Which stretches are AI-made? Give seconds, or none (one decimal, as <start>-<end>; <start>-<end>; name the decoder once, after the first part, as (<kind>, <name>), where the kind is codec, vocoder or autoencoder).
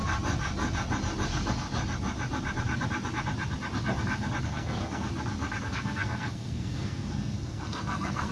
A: 4.4-5.1 (codec, SNAC); 5.6-8.3